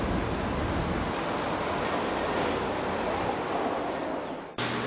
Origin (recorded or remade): recorded